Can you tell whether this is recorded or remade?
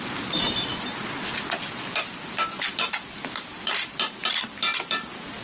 recorded